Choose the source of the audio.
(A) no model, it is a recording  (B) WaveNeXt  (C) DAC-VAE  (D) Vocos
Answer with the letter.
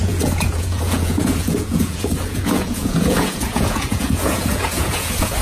D